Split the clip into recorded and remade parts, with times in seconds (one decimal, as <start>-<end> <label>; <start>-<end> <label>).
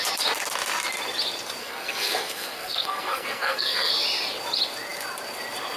0.0-1.6 recorded; 1.6-3.9 remade; 3.9-5.8 recorded